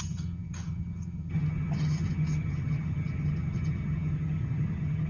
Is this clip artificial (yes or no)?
yes